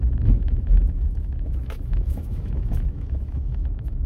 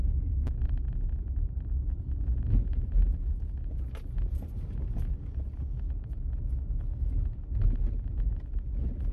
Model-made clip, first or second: first